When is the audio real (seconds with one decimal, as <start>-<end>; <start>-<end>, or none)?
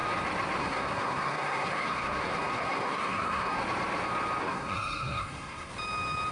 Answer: 0.0-0.6; 3.6-4.4; 5.7-6.3